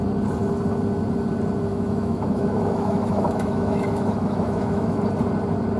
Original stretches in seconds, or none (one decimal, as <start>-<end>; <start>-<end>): 0.0-1.7; 5.0-5.8